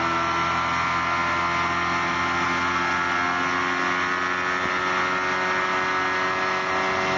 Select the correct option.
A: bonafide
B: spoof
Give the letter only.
A